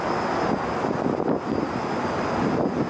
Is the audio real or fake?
real